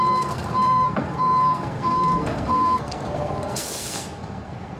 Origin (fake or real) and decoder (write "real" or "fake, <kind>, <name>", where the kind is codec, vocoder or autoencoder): fake, codec, SNAC